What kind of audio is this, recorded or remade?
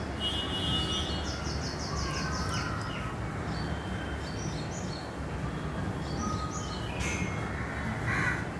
recorded